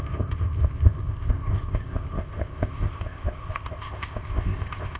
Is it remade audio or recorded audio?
remade